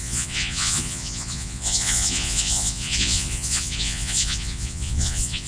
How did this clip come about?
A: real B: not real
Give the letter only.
B